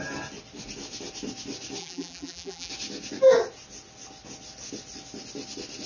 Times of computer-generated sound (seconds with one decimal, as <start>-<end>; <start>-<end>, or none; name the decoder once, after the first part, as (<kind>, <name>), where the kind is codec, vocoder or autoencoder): 1.8-2.7 (vocoder, BigVGAN v2)